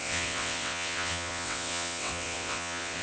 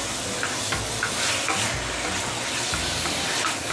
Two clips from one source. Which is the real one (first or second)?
second